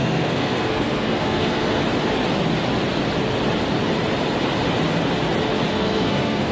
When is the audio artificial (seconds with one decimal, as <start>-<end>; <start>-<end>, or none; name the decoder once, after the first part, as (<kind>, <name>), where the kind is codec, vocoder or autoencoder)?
0.0-1.8 (codec, SNAC); 5.7-6.5